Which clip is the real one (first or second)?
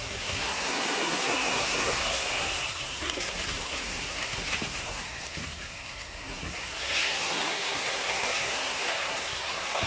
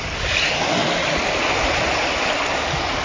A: second